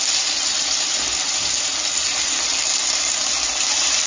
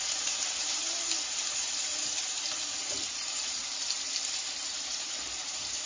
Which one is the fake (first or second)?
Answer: second